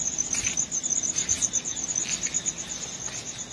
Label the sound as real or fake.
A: real